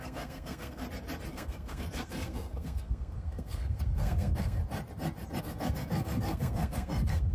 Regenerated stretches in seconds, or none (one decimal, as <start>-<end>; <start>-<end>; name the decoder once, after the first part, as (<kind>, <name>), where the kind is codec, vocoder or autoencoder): 0.0-0.8 (codec, SNAC); 1.3-4.6; 5.4-7.3